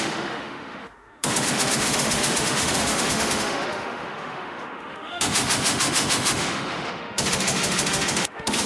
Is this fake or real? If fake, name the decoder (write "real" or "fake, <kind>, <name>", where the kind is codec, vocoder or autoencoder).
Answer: fake, autoencoder, DAC-VAE